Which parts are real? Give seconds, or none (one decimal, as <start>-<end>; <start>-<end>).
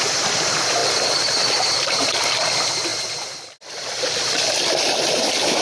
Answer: 0.0-5.6